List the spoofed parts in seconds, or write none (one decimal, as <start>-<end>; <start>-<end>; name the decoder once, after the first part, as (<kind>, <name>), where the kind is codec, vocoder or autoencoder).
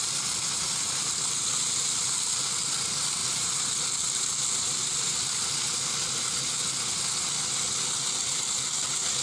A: none